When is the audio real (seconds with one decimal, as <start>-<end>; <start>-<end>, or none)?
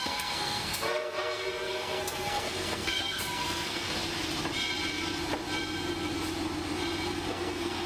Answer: 3.9-7.3